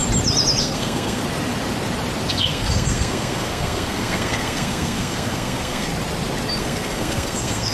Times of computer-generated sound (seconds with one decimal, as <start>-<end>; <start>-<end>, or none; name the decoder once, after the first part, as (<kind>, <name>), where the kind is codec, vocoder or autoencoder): 0.6-1.2 (codec, SNAC); 2.3-5.9; 6.6-7.7